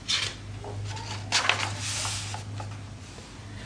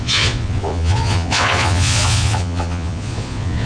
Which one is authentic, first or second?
first